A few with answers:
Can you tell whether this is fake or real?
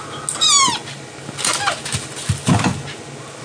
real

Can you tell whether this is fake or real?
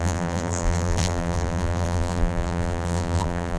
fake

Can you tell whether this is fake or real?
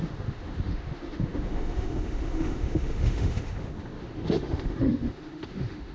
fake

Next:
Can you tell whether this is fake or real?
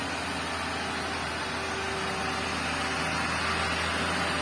real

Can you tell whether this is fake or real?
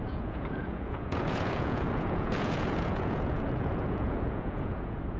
fake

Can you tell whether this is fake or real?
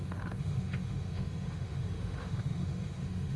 fake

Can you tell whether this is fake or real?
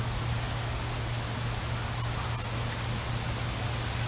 real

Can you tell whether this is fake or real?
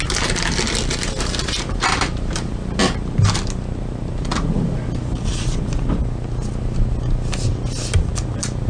real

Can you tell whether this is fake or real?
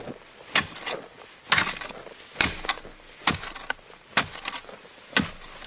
real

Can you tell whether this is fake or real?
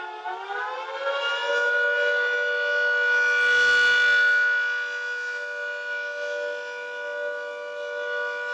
real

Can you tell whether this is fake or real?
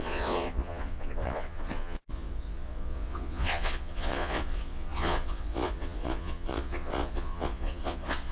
fake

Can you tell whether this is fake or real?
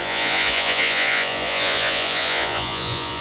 fake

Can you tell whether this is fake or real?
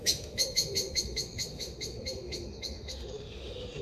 fake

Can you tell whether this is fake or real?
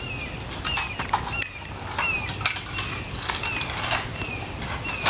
real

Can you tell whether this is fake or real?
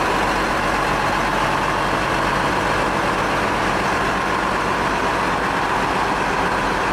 real